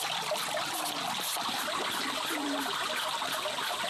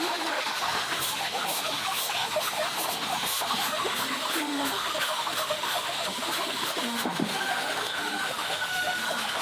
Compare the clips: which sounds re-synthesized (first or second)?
second